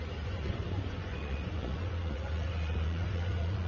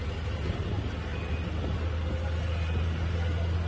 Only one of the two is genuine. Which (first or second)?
second